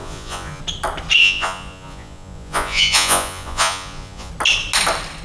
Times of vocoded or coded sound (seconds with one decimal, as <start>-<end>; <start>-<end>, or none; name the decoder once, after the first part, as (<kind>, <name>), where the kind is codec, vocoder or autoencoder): 0.0-0.6 (vocoder, Vocos); 1.2-4.3